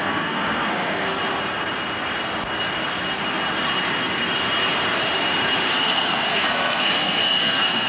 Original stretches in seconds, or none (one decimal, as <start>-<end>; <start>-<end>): 1.2-5.7